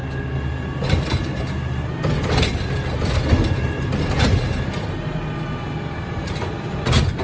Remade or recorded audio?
recorded